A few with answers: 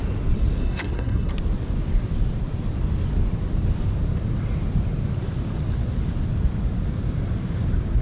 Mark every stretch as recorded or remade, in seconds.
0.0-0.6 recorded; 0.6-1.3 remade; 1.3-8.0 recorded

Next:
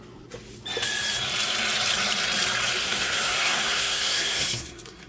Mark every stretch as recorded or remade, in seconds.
0.0-2.8 recorded; 2.8-5.1 remade

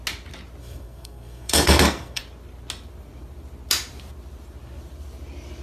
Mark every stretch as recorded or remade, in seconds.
0.0-0.6 recorded; 0.6-2.2 remade; 2.2-5.6 recorded